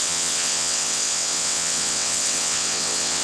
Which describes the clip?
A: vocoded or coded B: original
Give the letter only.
A